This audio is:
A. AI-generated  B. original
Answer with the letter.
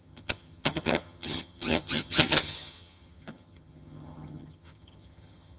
A